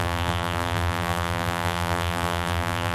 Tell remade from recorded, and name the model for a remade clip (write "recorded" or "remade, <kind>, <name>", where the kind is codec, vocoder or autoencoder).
remade, vocoder, BigVGAN v2